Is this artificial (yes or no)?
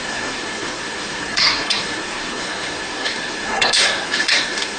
yes